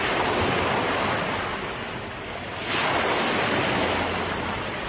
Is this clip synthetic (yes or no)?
no